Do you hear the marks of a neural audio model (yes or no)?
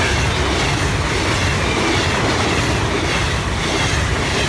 no